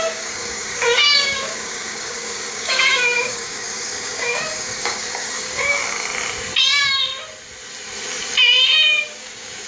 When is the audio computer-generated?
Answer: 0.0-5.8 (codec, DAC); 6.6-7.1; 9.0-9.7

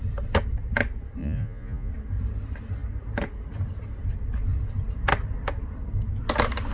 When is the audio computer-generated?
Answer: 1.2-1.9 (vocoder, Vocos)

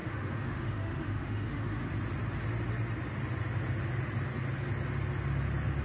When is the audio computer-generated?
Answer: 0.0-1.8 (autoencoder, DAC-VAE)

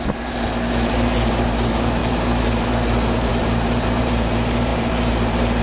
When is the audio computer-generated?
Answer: 0.0-5.6 (vocoder, BigVGAN v2)